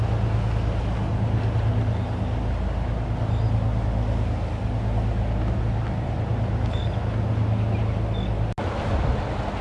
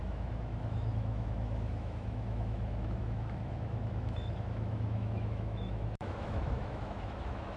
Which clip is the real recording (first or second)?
first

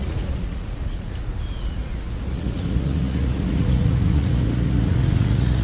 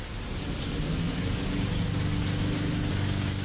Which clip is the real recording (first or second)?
second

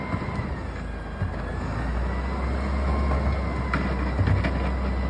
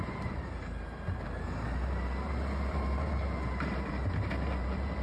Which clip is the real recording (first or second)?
first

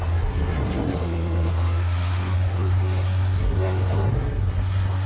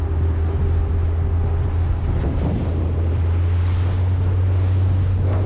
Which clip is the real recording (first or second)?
second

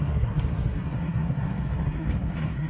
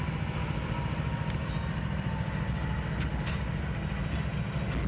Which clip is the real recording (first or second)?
second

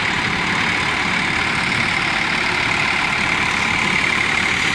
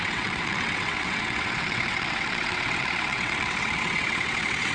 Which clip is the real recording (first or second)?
first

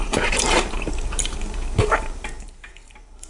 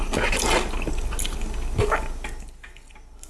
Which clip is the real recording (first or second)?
second